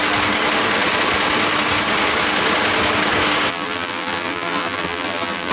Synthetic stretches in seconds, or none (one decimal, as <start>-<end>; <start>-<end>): 3.5-5.5